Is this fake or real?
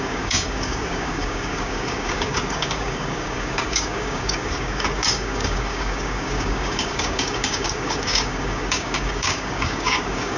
fake